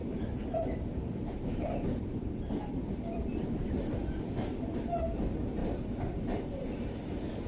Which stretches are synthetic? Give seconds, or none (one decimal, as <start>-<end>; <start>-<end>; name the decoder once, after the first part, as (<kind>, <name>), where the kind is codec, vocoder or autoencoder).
0.0-4.3 (vocoder, BigVGAN v2); 5.6-7.5